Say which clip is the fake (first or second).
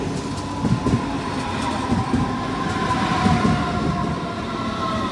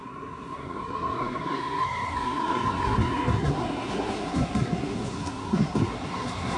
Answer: second